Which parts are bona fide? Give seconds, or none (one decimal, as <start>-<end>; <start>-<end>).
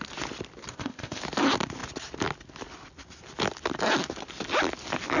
0.0-0.7; 1.2-5.2